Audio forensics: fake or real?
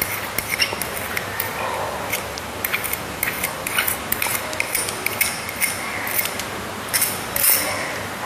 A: real